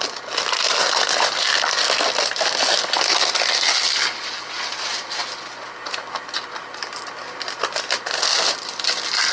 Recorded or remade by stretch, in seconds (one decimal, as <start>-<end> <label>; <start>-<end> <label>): 0.0-9.3 recorded